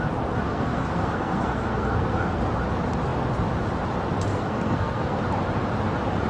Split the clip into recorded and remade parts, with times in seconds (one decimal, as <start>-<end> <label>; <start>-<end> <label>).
0.0-0.5 recorded; 0.5-2.4 remade; 2.4-4.3 recorded; 4.3-5.2 remade; 5.2-6.3 recorded